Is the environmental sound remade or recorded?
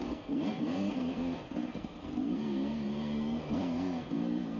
remade